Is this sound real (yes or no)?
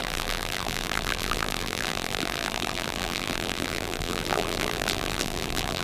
no